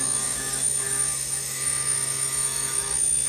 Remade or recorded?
remade